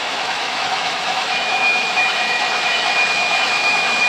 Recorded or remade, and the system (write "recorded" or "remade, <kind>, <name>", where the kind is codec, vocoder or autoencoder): remade, autoencoder, DAC-VAE